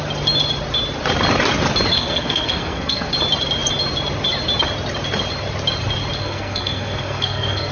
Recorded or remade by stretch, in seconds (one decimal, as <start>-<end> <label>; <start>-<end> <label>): 0.0-1.9 recorded; 1.9-3.1 remade; 3.1-6.2 recorded; 6.2-7.7 remade